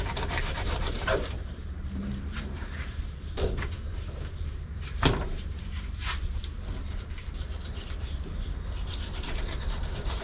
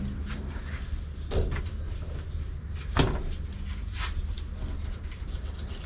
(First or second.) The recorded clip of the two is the second